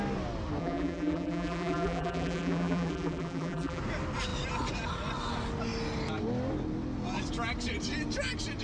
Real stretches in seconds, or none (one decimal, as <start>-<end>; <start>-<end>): 0.0-0.6; 3.8-8.6